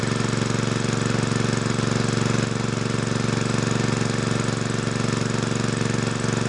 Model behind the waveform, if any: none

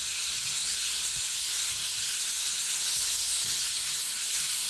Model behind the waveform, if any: codec, SNAC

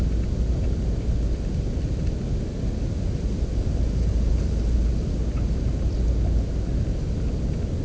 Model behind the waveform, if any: none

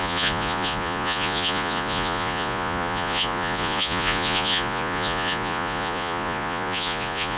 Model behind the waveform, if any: vocoder, Vocos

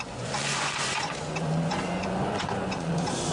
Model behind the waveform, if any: vocoder, Vocos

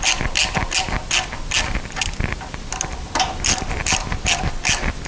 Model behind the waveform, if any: none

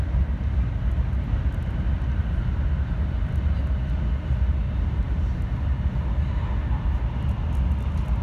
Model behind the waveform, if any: none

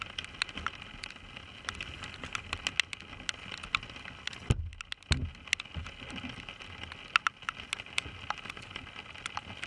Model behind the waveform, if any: none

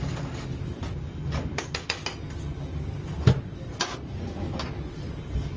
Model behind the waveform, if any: none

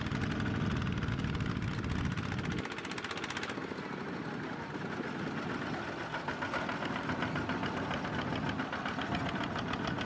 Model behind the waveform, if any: none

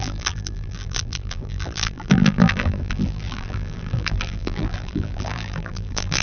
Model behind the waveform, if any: vocoder, BigVGAN v2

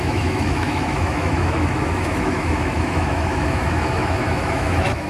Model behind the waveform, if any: autoencoder, DAC-VAE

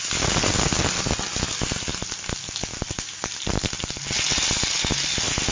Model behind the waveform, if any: none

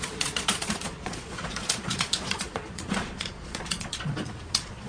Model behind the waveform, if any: vocoder, Vocos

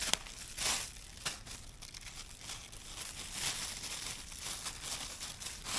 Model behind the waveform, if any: none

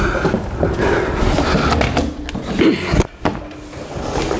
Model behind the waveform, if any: none